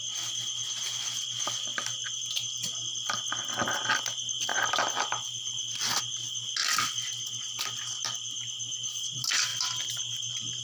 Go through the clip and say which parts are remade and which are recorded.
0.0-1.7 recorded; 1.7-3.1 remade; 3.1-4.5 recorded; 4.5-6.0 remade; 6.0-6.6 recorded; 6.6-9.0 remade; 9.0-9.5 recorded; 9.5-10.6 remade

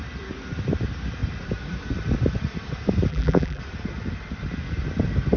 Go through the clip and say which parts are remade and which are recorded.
0.0-3.1 recorded; 3.1-3.6 remade; 3.6-5.4 recorded

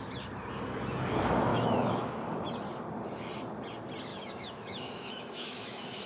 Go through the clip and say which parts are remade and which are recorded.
0.0-1.5 recorded; 1.5-2.1 remade; 2.1-4.1 recorded; 4.1-6.1 remade

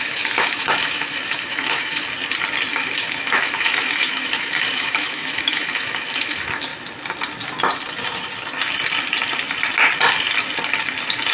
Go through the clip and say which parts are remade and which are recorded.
0.0-2.0 remade; 2.0-2.7 recorded; 2.7-6.7 remade; 6.7-11.3 recorded

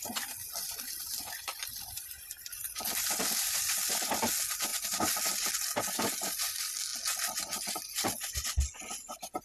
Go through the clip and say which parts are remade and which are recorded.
0.0-0.4 recorded; 0.4-4.0 remade; 4.0-9.4 recorded

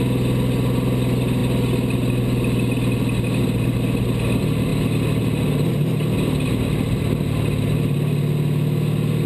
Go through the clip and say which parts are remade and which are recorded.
0.0-9.3 recorded

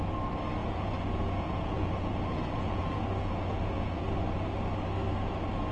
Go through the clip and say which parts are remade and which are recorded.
0.0-0.6 recorded; 0.6-4.0 remade; 4.0-5.7 recorded

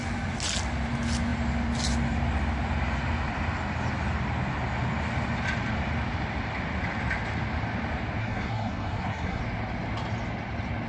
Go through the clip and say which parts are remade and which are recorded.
0.0-8.2 recorded; 8.2-9.4 remade; 9.4-10.9 recorded